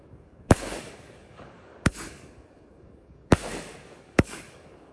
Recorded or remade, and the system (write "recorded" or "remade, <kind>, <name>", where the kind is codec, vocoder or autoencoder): remade, codec, DAC